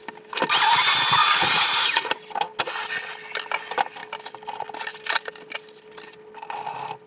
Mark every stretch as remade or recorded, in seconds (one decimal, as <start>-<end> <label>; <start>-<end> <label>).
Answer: 0.0-1.2 recorded; 1.2-2.1 remade; 2.1-7.1 recorded

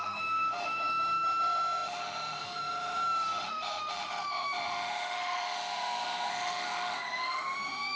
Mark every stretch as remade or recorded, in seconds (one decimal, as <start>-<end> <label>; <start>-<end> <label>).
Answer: 0.0-8.0 remade

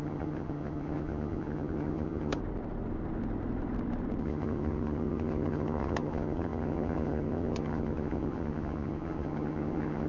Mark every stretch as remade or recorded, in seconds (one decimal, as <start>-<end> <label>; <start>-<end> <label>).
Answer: 0.0-2.4 remade; 2.4-4.2 recorded; 4.2-10.1 remade

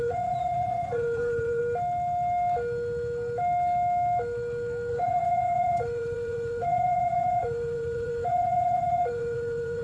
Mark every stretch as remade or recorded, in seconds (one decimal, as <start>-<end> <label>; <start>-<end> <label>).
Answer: 0.0-1.6 remade; 1.6-4.9 recorded; 4.9-9.8 remade